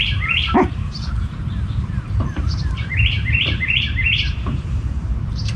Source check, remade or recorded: remade